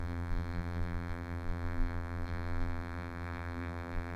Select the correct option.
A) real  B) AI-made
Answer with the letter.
B